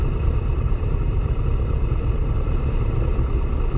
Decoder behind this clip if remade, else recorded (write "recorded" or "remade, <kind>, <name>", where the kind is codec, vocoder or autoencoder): recorded